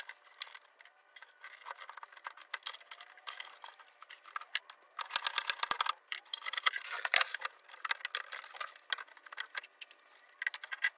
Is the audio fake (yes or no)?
no